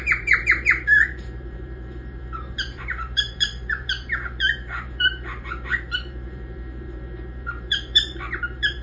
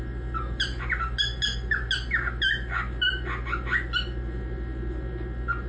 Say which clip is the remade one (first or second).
first